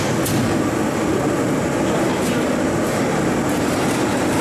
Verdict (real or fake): real